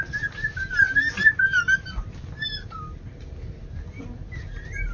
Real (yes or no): yes